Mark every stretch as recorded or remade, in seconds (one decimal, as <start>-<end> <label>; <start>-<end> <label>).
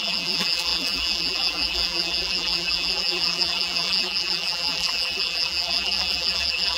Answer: 0.0-6.8 remade